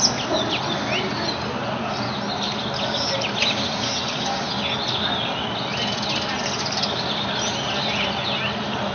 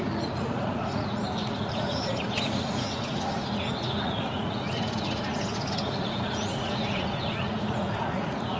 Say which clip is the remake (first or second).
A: second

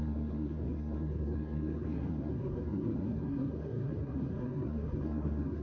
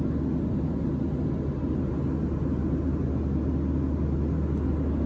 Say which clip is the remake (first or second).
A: first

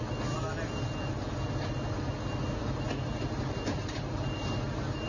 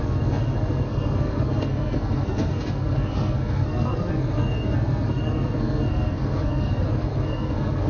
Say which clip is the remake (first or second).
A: second